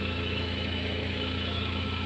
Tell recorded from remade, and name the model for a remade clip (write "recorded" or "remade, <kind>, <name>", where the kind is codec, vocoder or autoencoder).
remade, autoencoder, DAC-VAE